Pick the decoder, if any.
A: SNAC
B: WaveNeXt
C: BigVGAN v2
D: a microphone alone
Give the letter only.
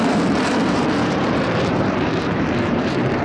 C